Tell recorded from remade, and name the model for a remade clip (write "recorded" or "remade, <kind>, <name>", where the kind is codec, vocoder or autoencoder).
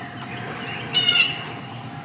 recorded